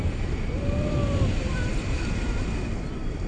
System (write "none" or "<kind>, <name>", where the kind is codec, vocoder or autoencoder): vocoder, BigVGAN v2